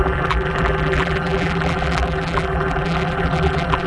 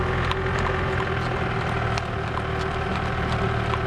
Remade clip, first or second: first